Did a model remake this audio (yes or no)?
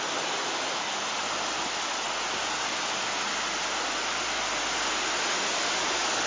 no